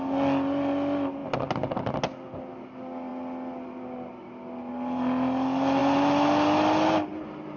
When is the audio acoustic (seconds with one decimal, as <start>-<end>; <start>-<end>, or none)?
0.0-7.6